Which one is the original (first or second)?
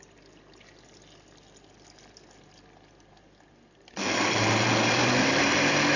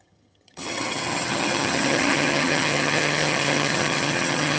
first